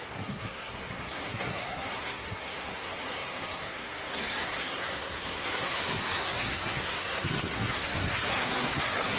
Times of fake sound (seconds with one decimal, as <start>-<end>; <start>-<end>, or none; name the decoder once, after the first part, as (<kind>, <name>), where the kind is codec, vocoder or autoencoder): 0.0-9.2 (codec, SNAC)

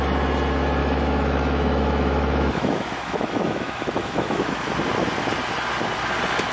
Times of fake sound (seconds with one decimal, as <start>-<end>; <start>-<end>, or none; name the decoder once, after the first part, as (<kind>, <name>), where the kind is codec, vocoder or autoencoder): 0.8-4.7 (autoencoder, DAC-VAE)

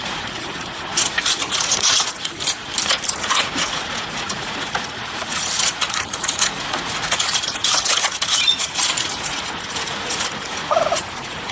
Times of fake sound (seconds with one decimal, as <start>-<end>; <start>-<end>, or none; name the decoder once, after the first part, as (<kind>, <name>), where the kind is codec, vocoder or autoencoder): 0.0-2.7 (vocoder, Vocos); 3.2-11.5